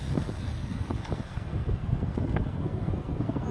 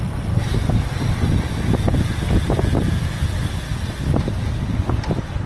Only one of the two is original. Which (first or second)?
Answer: second